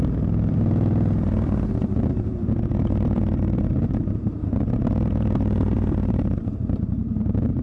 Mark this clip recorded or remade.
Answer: remade